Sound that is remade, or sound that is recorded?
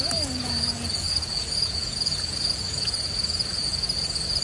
remade